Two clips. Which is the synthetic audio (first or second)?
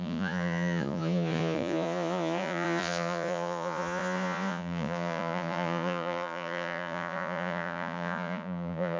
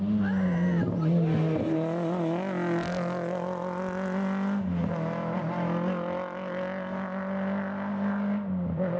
first